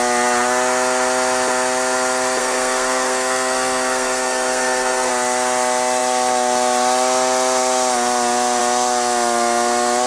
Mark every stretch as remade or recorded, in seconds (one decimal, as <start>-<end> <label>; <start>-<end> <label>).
0.0-2.4 recorded; 2.4-5.1 remade; 5.1-10.1 recorded

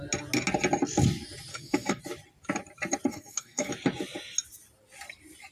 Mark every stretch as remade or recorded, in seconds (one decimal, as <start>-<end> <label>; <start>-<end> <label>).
0.0-1.5 recorded; 1.5-2.0 remade; 2.0-3.1 recorded; 3.1-3.7 remade; 3.7-5.5 recorded

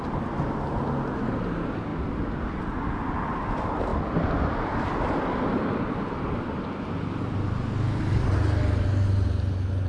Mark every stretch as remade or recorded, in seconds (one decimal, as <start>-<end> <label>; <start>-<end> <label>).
0.0-9.9 recorded

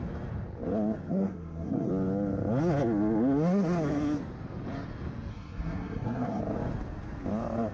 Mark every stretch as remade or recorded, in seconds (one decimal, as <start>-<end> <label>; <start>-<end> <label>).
0.0-1.1 recorded; 1.1-1.9 remade; 1.9-5.3 recorded; 5.3-6.4 remade; 6.4-7.7 recorded

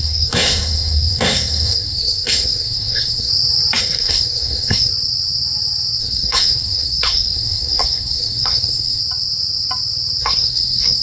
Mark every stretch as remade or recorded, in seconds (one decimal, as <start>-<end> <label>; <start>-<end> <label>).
0.0-3.3 remade; 3.3-3.8 recorded; 3.8-4.9 remade; 4.9-6.0 recorded; 6.0-9.0 remade; 9.0-10.2 recorded; 10.2-11.0 remade

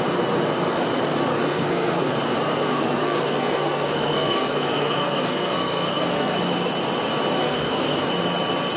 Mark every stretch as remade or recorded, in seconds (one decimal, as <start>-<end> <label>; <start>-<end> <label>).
0.0-1.3 recorded; 1.3-2.1 remade; 2.1-2.7 recorded; 2.7-6.4 remade; 6.4-7.4 recorded; 7.4-8.1 remade; 8.1-8.8 recorded

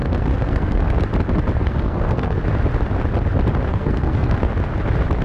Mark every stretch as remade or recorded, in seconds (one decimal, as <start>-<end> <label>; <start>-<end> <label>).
0.0-0.9 remade; 0.9-1.6 recorded; 1.6-2.4 remade; 2.4-3.7 recorded; 3.7-4.5 remade; 4.5-5.2 recorded

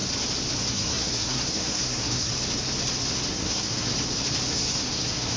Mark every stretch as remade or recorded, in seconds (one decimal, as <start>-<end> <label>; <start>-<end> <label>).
0.0-0.7 recorded; 0.7-2.3 remade; 2.3-3.3 recorded; 3.3-3.9 remade; 3.9-4.5 recorded; 4.5-5.4 remade